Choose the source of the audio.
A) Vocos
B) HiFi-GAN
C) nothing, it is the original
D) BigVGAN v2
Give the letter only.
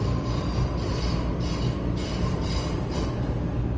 C